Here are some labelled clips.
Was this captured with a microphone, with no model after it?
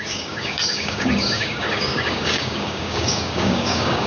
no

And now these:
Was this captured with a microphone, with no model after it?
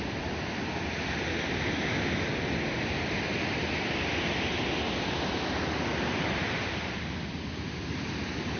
yes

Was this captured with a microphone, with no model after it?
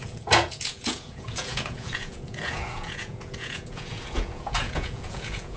no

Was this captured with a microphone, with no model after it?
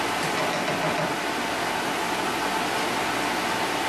yes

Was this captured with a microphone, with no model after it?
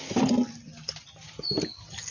yes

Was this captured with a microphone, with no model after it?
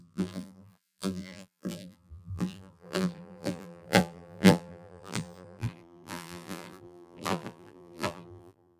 no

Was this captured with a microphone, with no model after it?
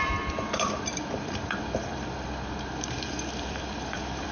no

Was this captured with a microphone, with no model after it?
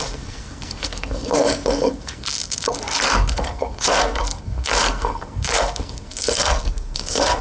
no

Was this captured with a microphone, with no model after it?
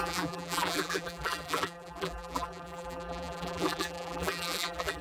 no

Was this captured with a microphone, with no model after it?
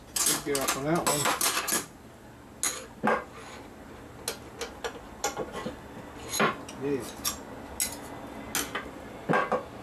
yes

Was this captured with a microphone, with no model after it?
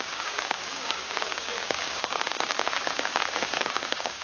no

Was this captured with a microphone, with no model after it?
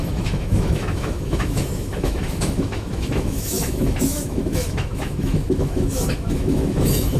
no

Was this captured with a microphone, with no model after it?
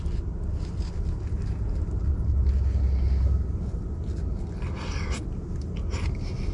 yes